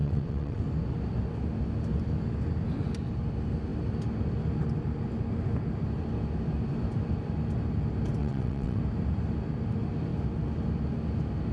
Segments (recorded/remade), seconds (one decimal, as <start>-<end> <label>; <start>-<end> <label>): 0.0-0.6 remade; 0.6-8.2 recorded; 8.2-8.8 remade; 8.8-11.5 recorded